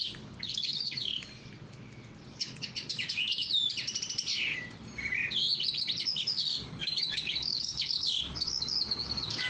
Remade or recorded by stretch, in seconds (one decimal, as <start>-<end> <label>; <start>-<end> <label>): 0.0-1.1 remade; 1.1-2.3 recorded; 2.3-3.5 remade; 3.5-6.0 recorded; 6.0-9.5 remade